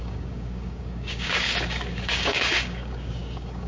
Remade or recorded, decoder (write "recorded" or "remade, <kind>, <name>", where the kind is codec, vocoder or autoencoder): remade, codec, DAC